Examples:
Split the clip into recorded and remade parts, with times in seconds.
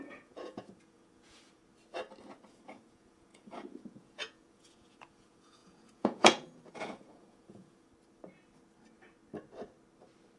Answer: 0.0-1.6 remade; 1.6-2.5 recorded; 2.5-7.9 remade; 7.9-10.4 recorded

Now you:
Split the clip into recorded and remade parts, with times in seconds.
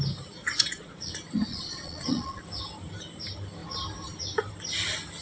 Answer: 0.0-0.4 recorded; 0.4-1.1 remade; 1.1-1.5 recorded; 1.5-2.4 remade; 2.4-5.2 recorded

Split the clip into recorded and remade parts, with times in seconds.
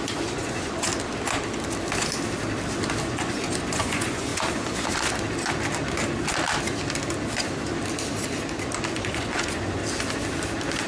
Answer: 0.0-0.9 remade; 0.9-3.0 recorded; 3.0-4.3 remade; 4.3-8.9 recorded; 8.9-9.8 remade; 9.8-10.9 recorded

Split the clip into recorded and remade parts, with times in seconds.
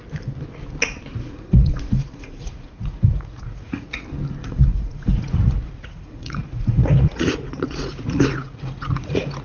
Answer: 0.0-1.1 recorded; 1.1-4.0 remade; 4.0-4.4 recorded; 4.4-9.4 remade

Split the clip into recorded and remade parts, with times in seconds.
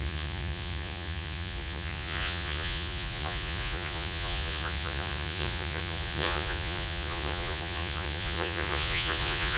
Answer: 0.0-9.6 remade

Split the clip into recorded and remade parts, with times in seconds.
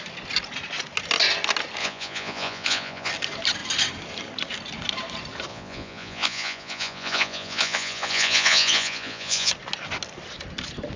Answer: 0.0-1.8 recorded; 1.8-3.1 remade; 3.1-5.5 recorded; 5.5-9.5 remade; 9.5-11.0 recorded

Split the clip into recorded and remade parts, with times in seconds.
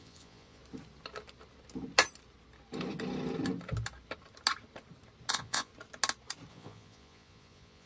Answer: 0.0-0.6 remade; 0.6-5.3 recorded; 5.3-5.7 remade; 5.7-6.5 recorded; 6.5-7.9 remade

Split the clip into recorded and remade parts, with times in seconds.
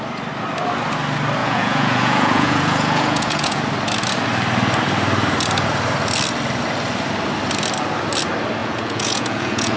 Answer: 0.0-1.4 recorded; 1.4-3.6 remade; 3.6-8.6 recorded; 8.6-9.8 remade